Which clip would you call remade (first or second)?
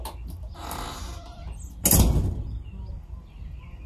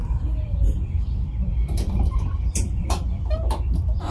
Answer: second